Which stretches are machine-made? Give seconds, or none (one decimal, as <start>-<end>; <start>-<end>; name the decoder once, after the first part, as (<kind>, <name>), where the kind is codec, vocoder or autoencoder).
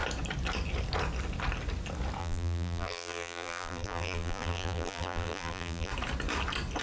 2.2-5.9 (vocoder, BigVGAN v2)